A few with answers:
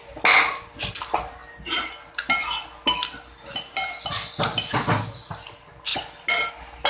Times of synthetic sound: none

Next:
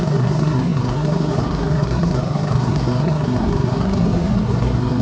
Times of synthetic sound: 0.0-5.0 (codec, SNAC)

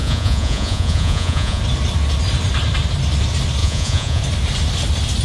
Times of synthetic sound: 0.0-1.6 (vocoder, Vocos); 3.6-4.2

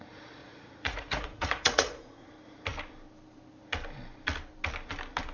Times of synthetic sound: 0.4-2.3 (vocoder, Vocos)